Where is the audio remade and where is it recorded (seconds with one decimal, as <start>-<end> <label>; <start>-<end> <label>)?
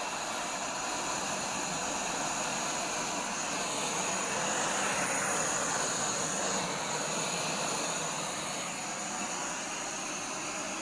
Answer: 0.0-10.8 recorded